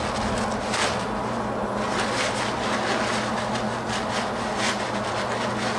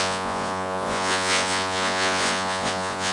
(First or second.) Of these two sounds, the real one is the first